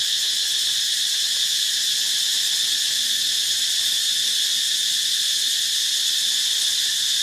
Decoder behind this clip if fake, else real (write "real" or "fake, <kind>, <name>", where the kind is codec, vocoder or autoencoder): real